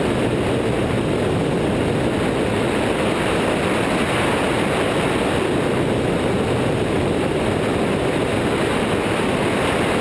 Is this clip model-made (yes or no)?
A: no